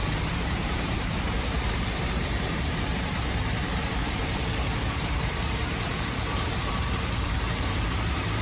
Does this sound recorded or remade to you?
remade